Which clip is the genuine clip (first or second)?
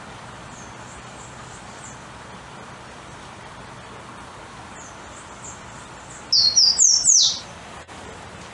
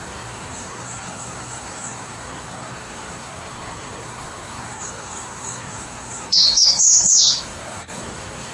first